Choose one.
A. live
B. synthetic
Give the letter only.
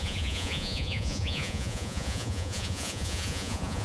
B